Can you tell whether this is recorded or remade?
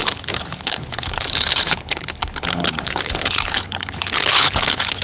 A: remade